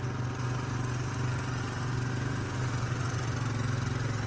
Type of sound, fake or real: real